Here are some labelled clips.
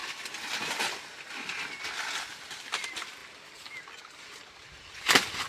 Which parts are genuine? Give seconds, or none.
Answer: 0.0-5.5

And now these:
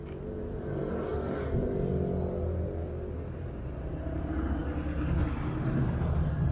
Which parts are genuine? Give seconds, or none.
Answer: 0.0-6.5

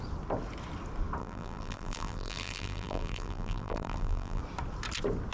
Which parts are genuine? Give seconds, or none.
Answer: 0.0-1.2; 4.4-5.3

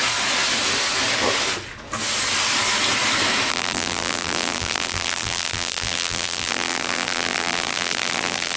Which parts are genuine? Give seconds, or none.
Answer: 0.0-3.5

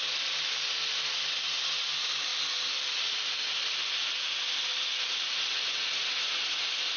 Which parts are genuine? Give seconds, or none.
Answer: 0.0-7.0

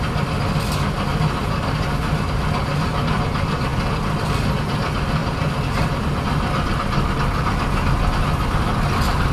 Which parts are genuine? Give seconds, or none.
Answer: 0.0-1.4; 2.5-9.3

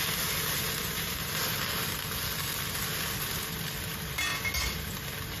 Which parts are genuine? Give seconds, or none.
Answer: 0.0-0.8; 1.4-5.4